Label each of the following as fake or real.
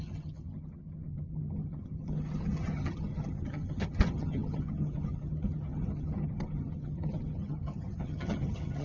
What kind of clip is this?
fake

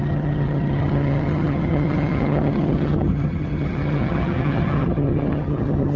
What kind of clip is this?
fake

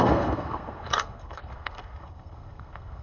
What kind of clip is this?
fake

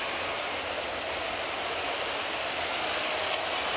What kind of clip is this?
real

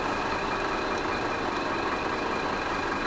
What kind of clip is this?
real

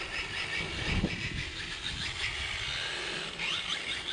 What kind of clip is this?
real